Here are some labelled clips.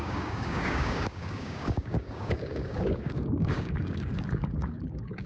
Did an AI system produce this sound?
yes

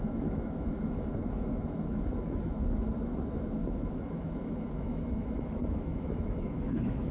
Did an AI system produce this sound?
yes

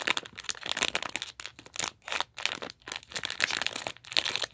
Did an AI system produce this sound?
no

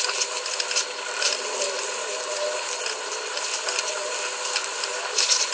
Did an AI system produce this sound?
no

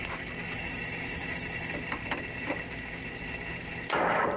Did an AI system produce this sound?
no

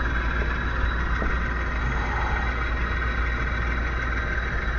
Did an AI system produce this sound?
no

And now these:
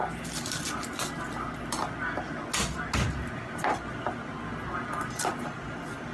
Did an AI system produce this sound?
no